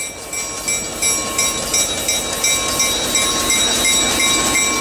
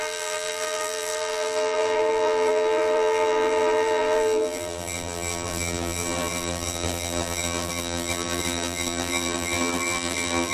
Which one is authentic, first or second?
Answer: first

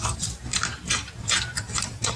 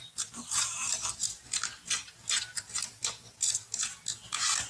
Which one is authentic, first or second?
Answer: second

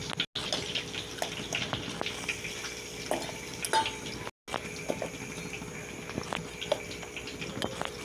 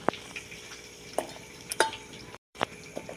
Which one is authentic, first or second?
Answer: first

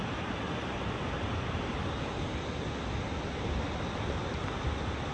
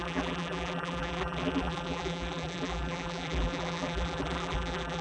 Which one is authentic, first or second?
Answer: first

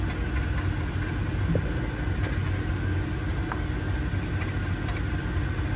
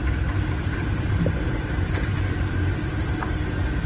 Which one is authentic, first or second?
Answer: first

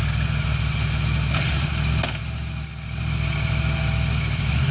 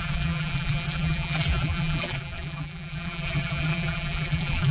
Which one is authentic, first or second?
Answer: first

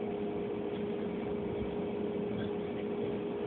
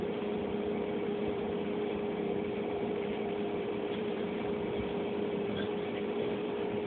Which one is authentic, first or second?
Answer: first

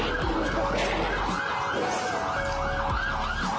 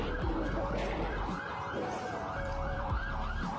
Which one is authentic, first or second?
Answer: first